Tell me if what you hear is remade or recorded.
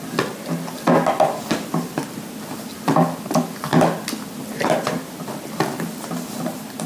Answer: recorded